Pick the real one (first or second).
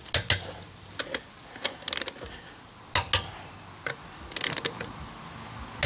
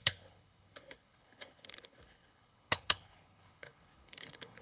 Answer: first